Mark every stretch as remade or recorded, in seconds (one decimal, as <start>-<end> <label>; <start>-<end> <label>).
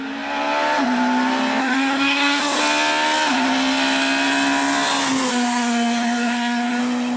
0.0-1.6 recorded; 1.6-2.6 remade; 2.6-5.3 recorded; 5.3-6.8 remade; 6.8-7.2 recorded